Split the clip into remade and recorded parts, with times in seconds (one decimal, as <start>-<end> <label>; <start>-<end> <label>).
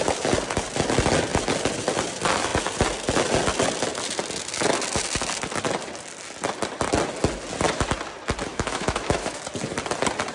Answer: 0.0-8.5 recorded; 8.5-9.4 remade; 9.4-10.3 recorded